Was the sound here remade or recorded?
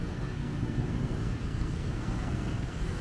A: remade